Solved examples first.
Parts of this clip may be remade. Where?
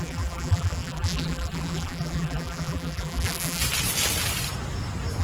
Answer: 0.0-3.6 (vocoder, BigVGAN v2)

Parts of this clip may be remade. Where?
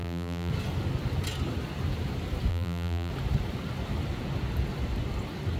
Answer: 0.0-0.5 (vocoder, BigVGAN v2); 2.5-3.1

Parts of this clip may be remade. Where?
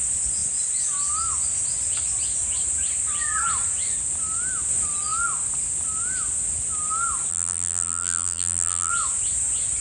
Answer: 7.3-8.9 (vocoder, BigVGAN v2)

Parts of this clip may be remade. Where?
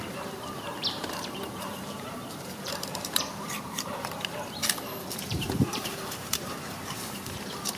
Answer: 0.0-4.6 (vocoder, BigVGAN v2); 5.2-7.8